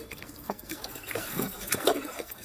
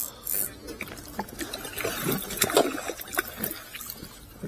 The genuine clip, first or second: second